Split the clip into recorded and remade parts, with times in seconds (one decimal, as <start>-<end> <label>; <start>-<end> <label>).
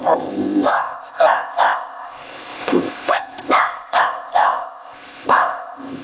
0.0-6.0 remade